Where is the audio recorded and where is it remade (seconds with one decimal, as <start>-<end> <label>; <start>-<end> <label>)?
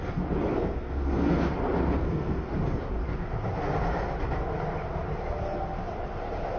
0.0-0.5 recorded; 0.5-1.3 remade; 1.3-2.0 recorded; 2.0-2.5 remade; 2.5-6.6 recorded